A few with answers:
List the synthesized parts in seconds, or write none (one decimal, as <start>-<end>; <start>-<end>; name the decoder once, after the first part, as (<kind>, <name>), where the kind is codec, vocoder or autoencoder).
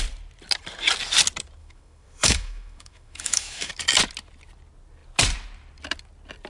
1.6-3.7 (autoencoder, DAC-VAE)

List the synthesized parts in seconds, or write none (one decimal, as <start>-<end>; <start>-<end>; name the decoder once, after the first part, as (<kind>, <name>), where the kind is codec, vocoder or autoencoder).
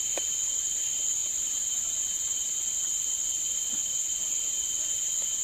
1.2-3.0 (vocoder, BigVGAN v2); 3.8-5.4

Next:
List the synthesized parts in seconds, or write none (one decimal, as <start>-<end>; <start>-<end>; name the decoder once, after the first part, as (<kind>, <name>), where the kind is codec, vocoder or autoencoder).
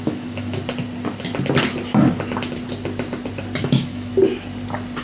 0.0-0.6 (autoencoder, DAC-VAE); 3.6-4.1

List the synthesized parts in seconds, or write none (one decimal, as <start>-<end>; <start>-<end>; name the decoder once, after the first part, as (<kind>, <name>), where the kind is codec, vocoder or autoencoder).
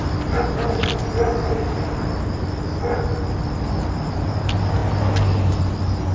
none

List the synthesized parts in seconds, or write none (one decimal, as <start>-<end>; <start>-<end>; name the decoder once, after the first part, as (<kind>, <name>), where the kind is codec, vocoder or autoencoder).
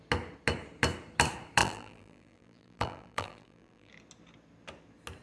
1.6-3.9 (vocoder, BigVGAN v2)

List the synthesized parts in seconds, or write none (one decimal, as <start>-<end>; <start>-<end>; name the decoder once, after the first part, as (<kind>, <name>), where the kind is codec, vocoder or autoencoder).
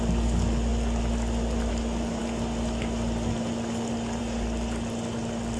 none